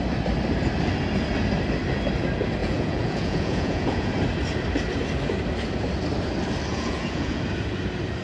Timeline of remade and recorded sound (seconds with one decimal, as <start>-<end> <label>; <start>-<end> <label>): 0.0-2.6 recorded; 2.6-4.1 remade; 4.1-6.7 recorded; 6.7-7.4 remade; 7.4-8.2 recorded